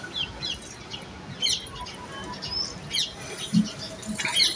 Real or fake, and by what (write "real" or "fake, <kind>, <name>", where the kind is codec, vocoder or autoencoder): real